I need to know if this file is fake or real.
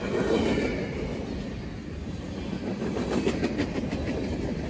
real